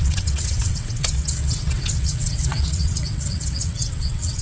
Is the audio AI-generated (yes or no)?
yes